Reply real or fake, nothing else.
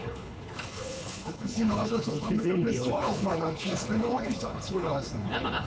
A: fake